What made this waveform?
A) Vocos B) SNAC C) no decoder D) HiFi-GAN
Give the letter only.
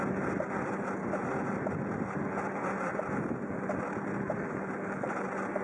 C